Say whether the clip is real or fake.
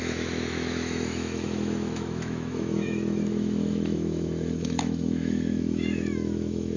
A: fake